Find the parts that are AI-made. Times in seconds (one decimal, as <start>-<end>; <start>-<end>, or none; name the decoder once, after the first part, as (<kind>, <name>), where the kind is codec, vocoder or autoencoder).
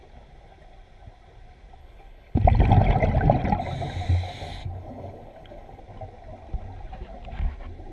1.8-2.4 (codec, HILCodec); 4.6-5.8